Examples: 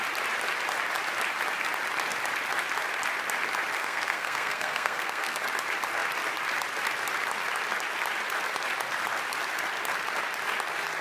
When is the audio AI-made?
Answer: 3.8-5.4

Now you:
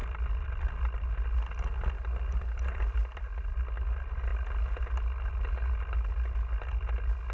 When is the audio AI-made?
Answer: none

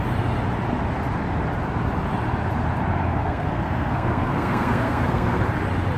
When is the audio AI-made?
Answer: 3.1-5.4

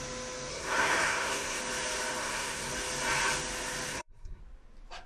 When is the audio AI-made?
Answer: 0.5-1.6; 2.2-2.7; 3.9-4.4

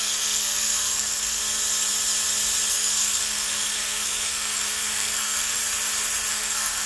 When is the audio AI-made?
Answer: 0.0-1.4; 2.7-5.6; 6.3-6.9

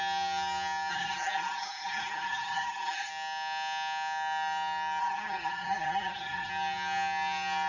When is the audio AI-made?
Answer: 0.9-3.1; 5.0-6.5

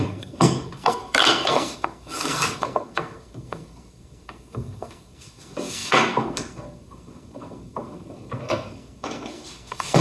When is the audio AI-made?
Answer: 0.0-10.0